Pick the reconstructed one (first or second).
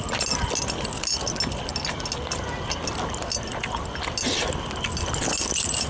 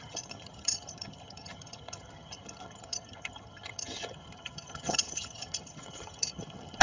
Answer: second